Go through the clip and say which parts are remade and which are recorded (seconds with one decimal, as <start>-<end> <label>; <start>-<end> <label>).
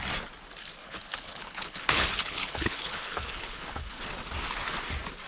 0.0-0.8 recorded; 0.8-4.0 remade; 4.0-5.3 recorded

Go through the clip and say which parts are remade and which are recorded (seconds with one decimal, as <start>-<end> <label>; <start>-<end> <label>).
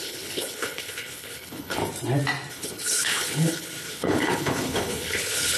0.0-1.8 remade; 1.8-2.5 recorded; 2.5-5.6 remade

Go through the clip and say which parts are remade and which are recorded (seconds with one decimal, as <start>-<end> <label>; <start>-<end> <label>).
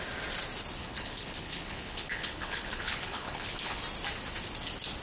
0.0-0.8 recorded; 0.8-3.8 remade; 3.8-5.0 recorded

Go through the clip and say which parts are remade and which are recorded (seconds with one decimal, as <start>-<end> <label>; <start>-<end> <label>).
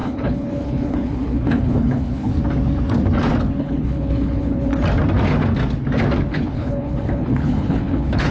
0.0-2.3 remade; 2.3-3.6 recorded; 3.6-4.7 remade; 4.7-6.3 recorded; 6.3-8.3 remade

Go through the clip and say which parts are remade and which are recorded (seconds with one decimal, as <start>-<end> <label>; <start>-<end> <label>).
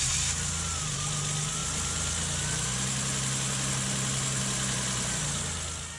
0.0-6.0 recorded